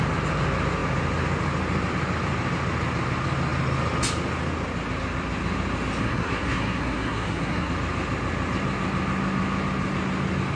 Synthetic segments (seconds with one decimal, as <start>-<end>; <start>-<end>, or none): 6.0-7.7